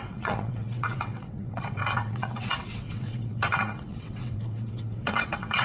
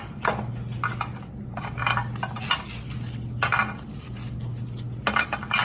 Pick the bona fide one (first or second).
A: second